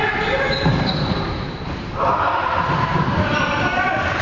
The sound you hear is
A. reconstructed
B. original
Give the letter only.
A